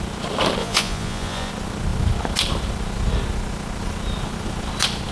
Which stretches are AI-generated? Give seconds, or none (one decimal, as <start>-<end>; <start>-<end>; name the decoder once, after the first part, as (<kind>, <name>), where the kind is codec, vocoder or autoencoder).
0.6-1.5 (vocoder, Vocos)